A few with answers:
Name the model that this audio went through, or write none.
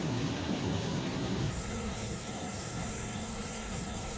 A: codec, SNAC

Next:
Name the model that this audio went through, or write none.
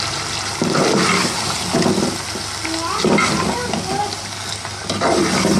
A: none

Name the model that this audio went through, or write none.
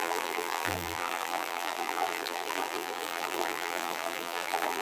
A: vocoder, BigVGAN v2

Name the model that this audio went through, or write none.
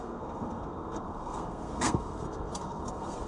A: codec, SNAC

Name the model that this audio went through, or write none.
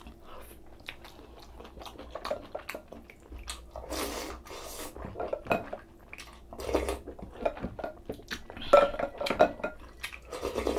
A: none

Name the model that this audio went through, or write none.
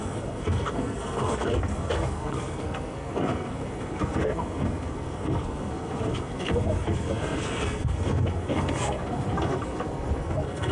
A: codec, SNAC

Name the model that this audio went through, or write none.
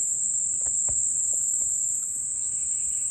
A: none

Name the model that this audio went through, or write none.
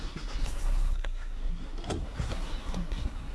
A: codec, SNAC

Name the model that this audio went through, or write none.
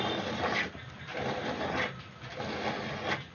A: none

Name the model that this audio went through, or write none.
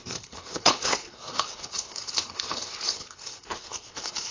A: codec, HILCodec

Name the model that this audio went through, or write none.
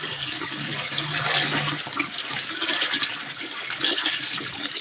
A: codec, DAC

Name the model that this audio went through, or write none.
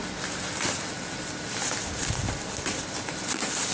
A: none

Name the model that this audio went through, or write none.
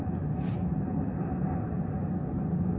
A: none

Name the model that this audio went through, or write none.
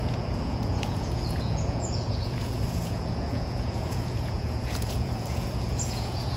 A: vocoder, Vocos